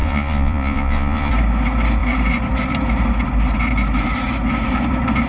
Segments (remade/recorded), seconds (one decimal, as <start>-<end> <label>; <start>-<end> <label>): 0.0-1.3 remade; 1.3-5.3 recorded